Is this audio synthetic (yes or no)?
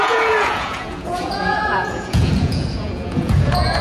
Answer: yes